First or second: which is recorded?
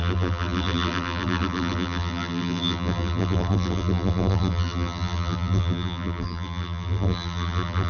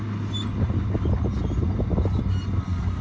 second